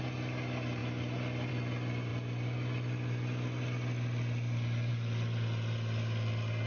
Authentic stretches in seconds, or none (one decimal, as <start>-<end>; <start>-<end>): 0.0-6.7